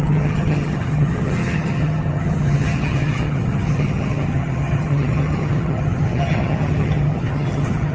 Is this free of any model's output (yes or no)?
no